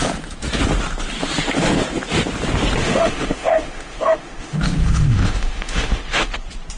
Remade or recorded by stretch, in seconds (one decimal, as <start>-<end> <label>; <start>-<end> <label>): 0.0-2.8 recorded; 2.8-6.3 remade; 6.3-6.8 recorded